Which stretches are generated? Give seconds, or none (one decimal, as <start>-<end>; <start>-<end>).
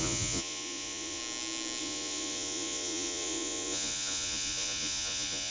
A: 0.0-1.2; 1.8-5.5